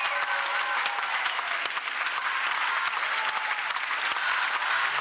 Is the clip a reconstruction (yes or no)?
no